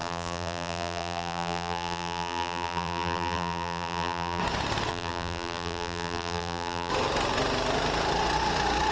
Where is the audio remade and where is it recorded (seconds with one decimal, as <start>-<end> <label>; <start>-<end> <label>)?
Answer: 0.0-4.4 remade; 4.4-4.9 recorded; 4.9-6.9 remade; 6.9-8.9 recorded